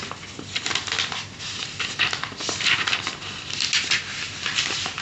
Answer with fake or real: real